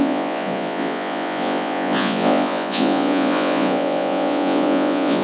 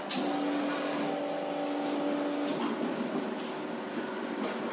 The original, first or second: second